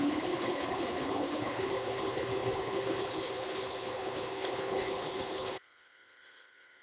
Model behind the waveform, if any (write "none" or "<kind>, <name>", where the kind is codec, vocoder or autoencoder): codec, HILCodec